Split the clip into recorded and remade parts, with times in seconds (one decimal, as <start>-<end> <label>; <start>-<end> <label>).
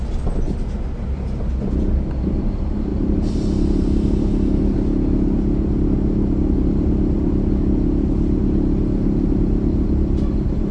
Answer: 0.0-10.7 recorded